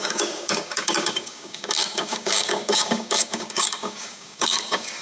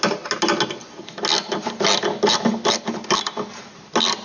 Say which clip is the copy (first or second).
first